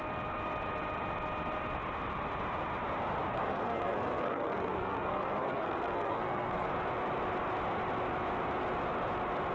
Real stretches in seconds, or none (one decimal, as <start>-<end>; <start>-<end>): 0.0-3.3; 6.7-9.5